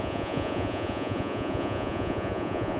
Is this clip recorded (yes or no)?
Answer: no